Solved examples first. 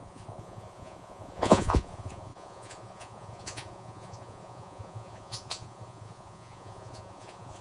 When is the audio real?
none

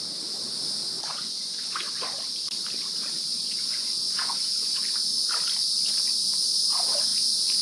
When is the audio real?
0.0-0.8; 1.9-3.4; 4.9-7.6

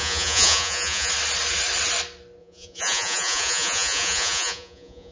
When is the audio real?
1.1-2.4

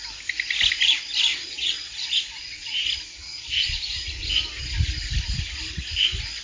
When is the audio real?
0.0-1.3; 2.8-3.3; 3.8-6.4

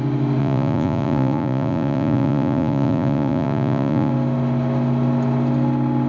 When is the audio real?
0.0-0.4; 4.1-6.1

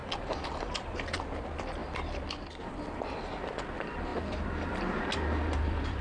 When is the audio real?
0.0-6.0